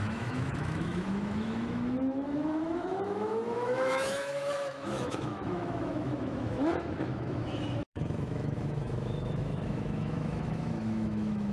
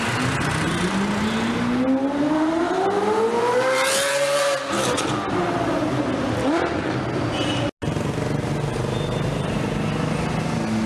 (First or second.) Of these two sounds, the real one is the second